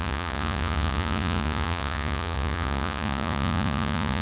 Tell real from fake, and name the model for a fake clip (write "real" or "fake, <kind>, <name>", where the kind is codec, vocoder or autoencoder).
fake, vocoder, Vocos